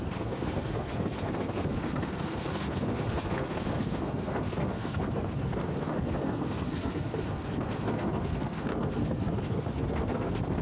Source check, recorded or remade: remade